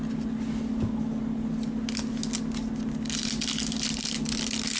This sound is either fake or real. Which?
real